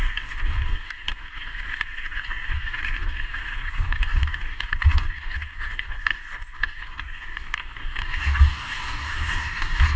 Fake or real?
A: fake